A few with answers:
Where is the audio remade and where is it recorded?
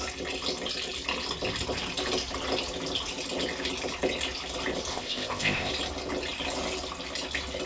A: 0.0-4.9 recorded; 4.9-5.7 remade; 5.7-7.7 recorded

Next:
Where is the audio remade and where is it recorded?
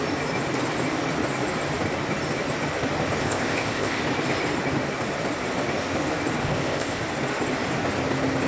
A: 0.0-3.2 recorded; 3.2-4.0 remade; 4.0-6.4 recorded; 6.4-7.0 remade; 7.0-8.5 recorded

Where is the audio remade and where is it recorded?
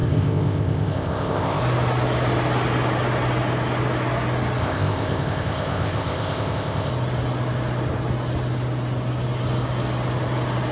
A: 0.0-1.6 remade; 1.6-4.6 recorded; 4.6-6.9 remade; 6.9-10.7 recorded